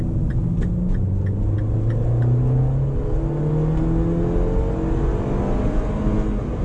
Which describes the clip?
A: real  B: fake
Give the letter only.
A